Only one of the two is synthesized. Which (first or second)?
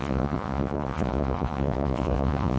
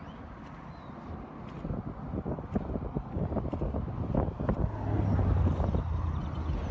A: first